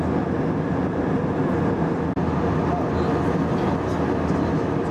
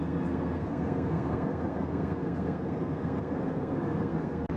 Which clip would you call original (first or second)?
first